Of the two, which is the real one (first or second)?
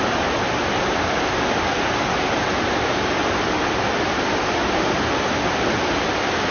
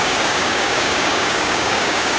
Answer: first